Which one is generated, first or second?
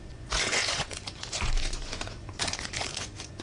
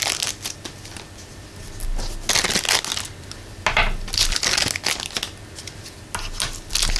first